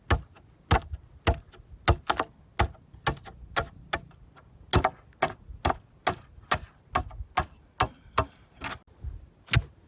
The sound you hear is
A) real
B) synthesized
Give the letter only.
A